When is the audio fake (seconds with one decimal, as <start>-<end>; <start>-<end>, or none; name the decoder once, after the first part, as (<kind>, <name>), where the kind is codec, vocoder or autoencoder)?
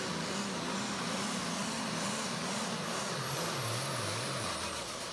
none